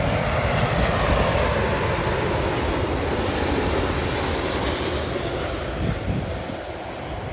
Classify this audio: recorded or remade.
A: recorded